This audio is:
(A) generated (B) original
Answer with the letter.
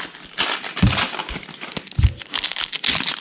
B